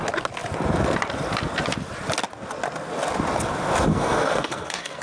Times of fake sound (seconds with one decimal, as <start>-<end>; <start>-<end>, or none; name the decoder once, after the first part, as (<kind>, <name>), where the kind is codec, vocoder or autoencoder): 3.9-5.0 (codec, SNAC)